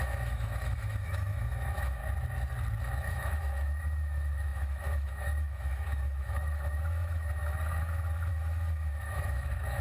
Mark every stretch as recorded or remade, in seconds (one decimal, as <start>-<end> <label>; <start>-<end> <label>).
0.0-2.0 remade; 2.0-3.1 recorded; 3.1-9.8 remade